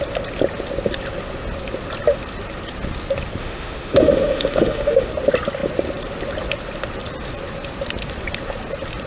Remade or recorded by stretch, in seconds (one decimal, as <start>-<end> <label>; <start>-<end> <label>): 0.0-3.4 recorded; 3.4-5.1 remade; 5.1-9.1 recorded

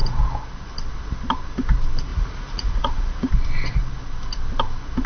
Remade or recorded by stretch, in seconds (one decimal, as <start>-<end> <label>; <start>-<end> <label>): 0.0-2.1 recorded; 2.1-3.3 remade; 3.3-5.1 recorded

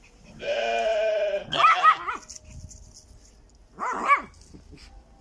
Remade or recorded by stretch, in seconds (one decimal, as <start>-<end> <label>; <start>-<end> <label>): 0.0-5.2 recorded

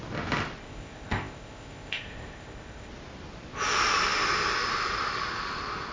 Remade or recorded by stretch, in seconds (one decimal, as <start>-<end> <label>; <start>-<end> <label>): 0.0-0.6 recorded; 0.6-2.9 remade; 2.9-5.9 recorded

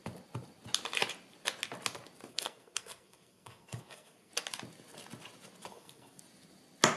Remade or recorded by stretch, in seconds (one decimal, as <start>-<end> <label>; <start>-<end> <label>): 0.0-2.3 recorded; 2.3-4.3 remade; 4.3-5.7 recorded; 5.7-6.2 remade; 6.2-7.0 recorded

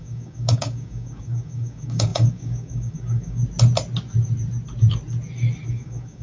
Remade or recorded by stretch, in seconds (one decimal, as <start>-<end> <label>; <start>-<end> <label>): 0.0-3.4 remade; 3.4-5.7 recorded; 5.7-6.2 remade

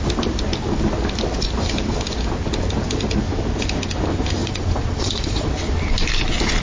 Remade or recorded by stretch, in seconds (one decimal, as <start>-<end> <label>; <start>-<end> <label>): 0.0-4.4 recorded; 4.4-5.5 remade; 5.5-6.6 recorded